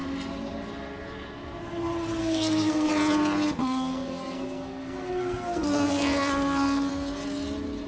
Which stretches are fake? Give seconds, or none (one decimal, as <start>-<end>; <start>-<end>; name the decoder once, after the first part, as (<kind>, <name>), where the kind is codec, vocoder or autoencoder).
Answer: 2.2-2.9 (codec, SNAC); 3.6-6.9